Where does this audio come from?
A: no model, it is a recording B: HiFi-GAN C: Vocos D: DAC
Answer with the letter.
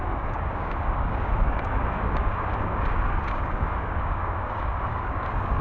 D